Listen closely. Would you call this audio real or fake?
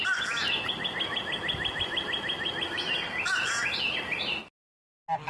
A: real